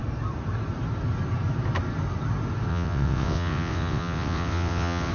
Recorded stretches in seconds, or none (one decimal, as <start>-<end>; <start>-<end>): 0.0-2.7